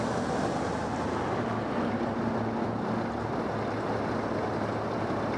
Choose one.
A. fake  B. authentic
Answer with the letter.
B